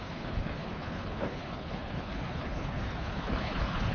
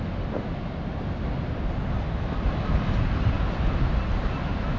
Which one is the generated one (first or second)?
first